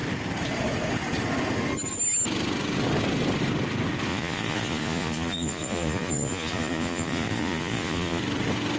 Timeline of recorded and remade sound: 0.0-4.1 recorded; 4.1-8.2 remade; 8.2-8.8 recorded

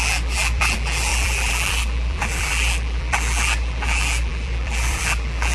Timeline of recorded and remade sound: 0.0-5.5 remade

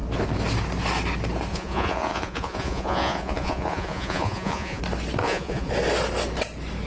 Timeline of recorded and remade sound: 0.0-1.5 recorded; 1.5-4.8 remade; 4.8-5.2 recorded; 5.2-5.7 remade; 5.7-6.9 recorded

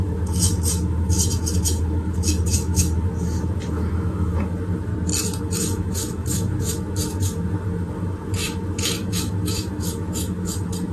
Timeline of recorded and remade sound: 0.0-4.9 remade; 4.9-5.4 recorded; 5.4-10.9 remade

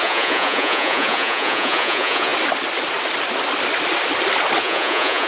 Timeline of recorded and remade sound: 0.0-2.3 remade; 2.3-4.6 recorded; 4.6-5.3 remade

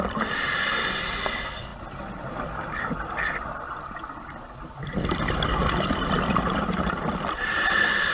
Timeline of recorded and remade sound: 0.0-8.1 recorded

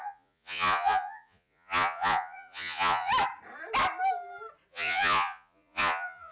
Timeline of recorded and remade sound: 0.0-3.1 remade; 3.1-4.7 recorded; 4.7-6.3 remade